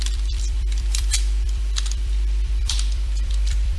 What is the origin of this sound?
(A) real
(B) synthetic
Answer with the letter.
B